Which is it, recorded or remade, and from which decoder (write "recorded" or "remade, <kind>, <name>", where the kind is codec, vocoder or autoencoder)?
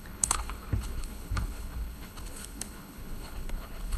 remade, codec, HILCodec